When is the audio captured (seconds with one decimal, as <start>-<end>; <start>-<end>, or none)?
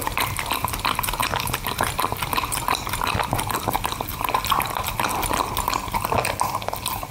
0.0-7.1